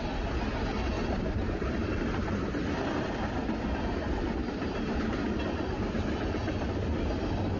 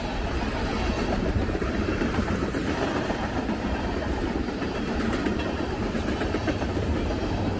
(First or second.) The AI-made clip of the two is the second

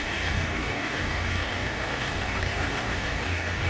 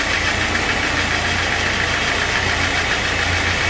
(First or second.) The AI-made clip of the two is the first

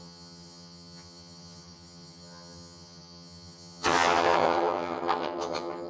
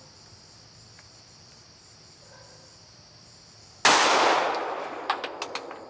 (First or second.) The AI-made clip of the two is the first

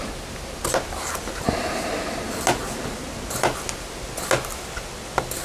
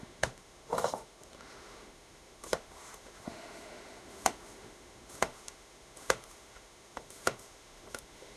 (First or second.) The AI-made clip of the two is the second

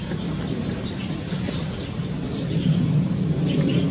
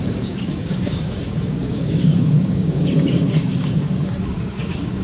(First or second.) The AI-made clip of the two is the second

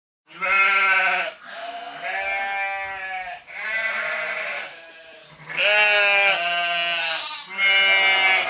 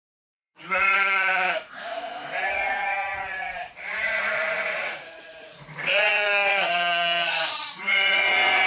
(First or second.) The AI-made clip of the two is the second